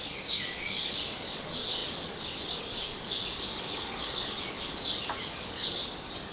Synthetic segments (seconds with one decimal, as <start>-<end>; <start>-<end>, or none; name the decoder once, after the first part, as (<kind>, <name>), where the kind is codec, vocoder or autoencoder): 0.0-6.3 (codec, DAC)